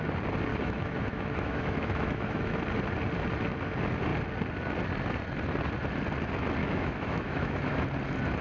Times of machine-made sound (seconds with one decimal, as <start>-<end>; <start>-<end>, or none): 0.5-2.6; 6.6-7.8